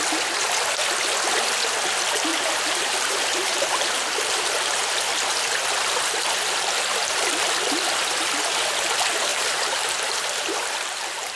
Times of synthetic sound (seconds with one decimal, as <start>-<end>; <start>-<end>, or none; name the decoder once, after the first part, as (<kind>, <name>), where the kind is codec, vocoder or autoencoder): 2.3-4.5 (vocoder, BigVGAN v2); 9.3-11.4